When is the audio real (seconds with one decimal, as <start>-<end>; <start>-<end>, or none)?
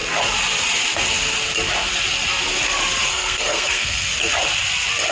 0.0-3.1; 4.1-5.1